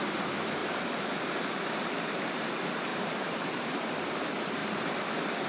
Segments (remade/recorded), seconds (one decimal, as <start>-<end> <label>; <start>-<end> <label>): 0.0-0.6 recorded; 0.6-1.5 remade; 1.5-2.9 recorded; 2.9-3.4 remade; 3.4-5.5 recorded